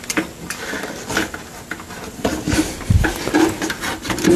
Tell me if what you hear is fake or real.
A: real